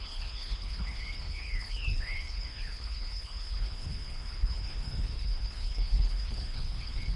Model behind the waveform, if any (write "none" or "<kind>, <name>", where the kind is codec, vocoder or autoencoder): codec, HILCodec